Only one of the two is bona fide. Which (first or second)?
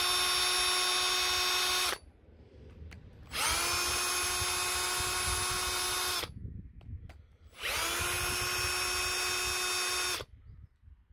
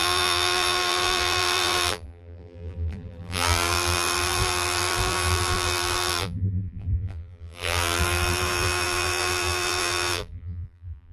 first